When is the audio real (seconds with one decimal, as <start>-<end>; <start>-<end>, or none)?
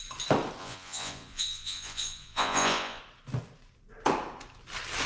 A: 0.0-0.6; 3.0-5.1